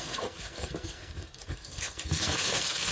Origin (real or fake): fake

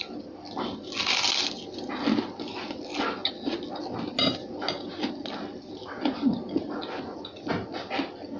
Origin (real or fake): real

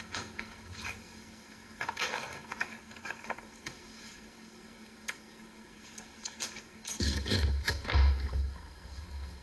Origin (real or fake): fake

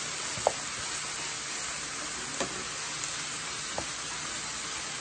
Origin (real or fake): real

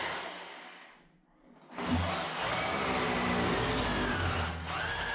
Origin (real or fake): real